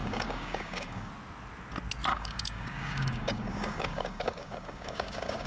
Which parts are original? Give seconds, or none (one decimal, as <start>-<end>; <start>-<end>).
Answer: 1.1-2.1